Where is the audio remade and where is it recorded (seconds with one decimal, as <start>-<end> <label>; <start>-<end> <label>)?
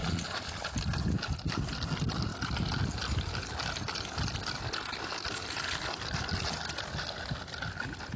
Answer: 0.0-0.7 remade; 0.7-8.2 recorded